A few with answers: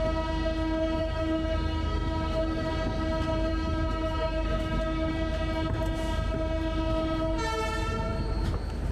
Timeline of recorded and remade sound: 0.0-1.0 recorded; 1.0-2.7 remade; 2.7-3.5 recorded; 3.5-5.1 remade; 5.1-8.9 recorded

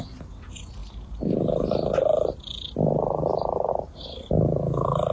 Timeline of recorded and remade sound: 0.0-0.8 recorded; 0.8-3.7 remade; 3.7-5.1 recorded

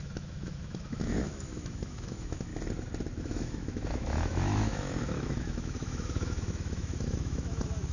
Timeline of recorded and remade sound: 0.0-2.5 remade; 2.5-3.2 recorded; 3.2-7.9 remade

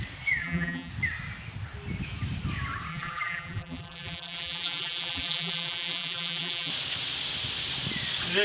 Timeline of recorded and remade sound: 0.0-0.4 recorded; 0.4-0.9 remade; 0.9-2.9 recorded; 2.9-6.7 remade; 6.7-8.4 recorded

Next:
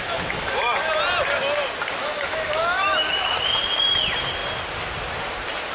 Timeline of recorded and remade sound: 0.0-2.0 recorded; 2.0-3.4 remade; 3.4-5.7 recorded